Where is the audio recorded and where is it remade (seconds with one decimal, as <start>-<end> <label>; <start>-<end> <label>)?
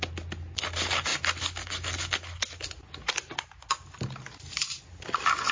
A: 0.0-5.5 recorded